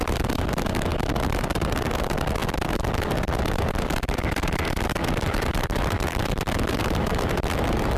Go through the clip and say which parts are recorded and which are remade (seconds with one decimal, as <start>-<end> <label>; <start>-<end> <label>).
0.0-8.0 recorded